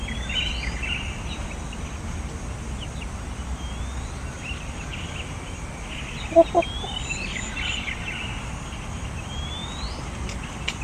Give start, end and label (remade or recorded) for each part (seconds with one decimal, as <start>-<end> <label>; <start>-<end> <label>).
0.0-10.8 recorded